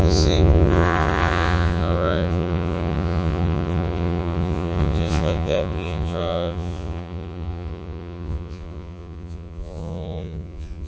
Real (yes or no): no